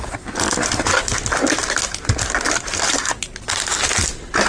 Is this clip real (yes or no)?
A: yes